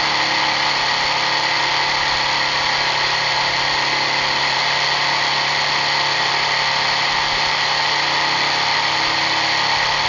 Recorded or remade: recorded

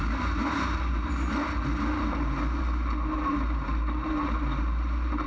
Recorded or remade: recorded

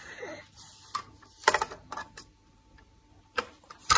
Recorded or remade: recorded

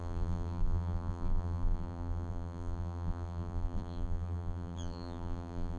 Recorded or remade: remade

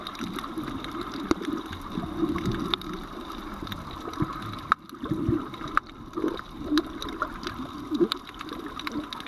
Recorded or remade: recorded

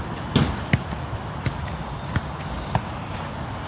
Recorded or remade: recorded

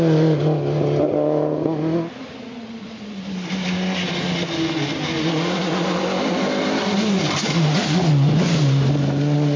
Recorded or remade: recorded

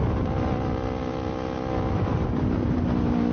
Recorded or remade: recorded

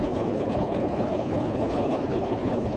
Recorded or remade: remade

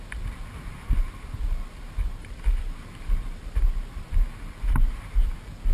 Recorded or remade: recorded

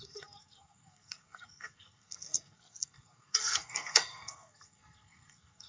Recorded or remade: remade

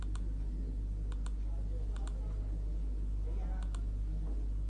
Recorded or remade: recorded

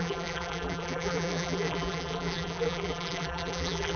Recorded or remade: remade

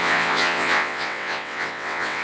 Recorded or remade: remade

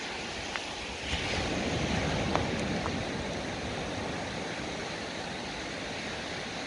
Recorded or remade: recorded